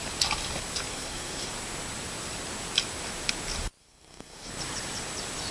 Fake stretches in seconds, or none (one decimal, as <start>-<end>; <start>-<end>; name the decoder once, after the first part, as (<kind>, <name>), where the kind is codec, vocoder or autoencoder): 0.9-1.5 (codec, SNAC); 3.8-4.5